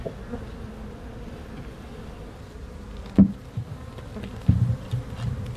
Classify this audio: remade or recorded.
recorded